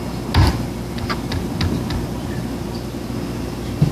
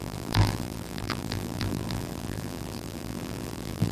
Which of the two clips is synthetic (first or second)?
second